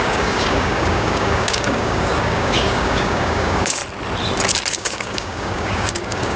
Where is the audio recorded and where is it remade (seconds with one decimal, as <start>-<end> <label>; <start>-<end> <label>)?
0.0-3.8 remade; 3.8-4.7 recorded; 4.7-6.4 remade